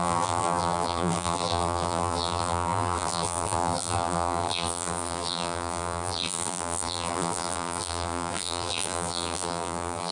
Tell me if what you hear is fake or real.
fake